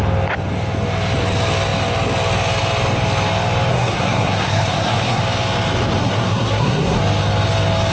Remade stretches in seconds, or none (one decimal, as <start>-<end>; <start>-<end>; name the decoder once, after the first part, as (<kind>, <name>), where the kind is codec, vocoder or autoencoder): 3.7-5.2 (codec, SNAC); 6.0-7.0